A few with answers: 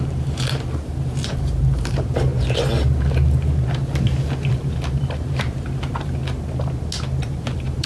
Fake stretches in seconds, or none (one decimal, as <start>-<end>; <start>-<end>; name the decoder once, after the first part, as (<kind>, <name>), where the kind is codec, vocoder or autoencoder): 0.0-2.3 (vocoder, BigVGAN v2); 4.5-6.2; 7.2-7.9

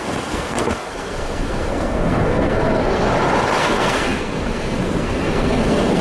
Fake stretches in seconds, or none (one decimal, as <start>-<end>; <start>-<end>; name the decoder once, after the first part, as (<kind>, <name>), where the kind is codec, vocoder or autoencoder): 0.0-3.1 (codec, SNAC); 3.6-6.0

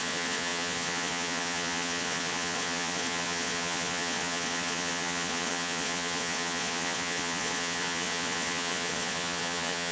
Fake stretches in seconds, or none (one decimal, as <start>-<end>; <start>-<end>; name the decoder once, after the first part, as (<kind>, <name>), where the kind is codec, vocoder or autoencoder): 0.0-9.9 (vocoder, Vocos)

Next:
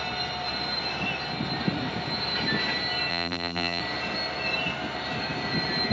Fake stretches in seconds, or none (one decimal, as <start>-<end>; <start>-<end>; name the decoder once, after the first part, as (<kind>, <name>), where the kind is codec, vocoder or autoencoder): 3.1-3.8 (vocoder, BigVGAN v2)

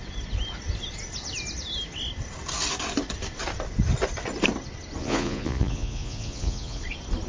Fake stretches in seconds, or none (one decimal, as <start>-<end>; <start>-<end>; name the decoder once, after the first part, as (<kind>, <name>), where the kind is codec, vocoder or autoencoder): 5.0-6.8 (vocoder, Vocos)

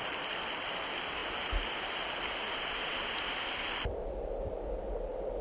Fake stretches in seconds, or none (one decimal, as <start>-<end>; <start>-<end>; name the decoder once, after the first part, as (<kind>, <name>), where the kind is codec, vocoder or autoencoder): none

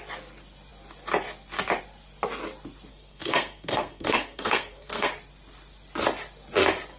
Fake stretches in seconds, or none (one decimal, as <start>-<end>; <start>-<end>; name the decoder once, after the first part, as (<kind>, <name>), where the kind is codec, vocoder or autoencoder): 2.9-5.1 (codec, SNAC)

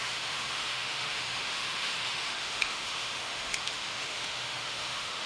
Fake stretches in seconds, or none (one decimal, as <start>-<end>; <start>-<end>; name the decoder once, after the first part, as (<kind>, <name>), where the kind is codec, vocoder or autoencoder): 0.0-5.3 (autoencoder, DAC-VAE)